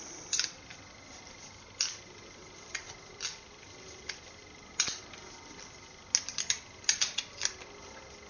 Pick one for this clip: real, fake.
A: real